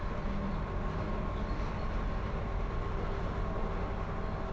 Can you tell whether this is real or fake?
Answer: real